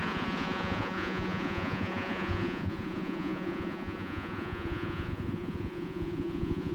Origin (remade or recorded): remade